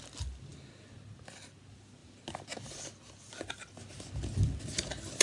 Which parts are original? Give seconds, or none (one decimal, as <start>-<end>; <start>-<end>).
0.0-5.2